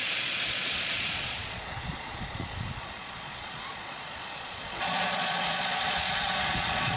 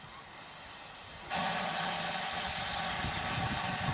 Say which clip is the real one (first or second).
second